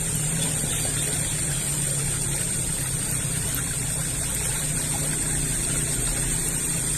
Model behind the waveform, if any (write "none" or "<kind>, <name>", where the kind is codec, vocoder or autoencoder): vocoder, BigVGAN v2